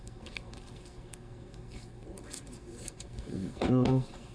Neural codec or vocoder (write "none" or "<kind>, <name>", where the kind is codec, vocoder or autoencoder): codec, SNAC